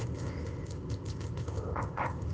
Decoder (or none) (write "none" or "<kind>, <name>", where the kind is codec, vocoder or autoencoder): codec, ZipCodec